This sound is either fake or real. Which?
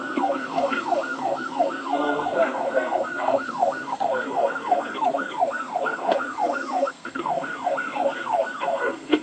fake